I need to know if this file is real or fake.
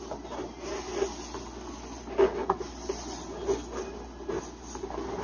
real